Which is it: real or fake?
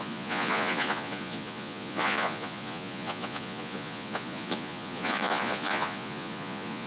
fake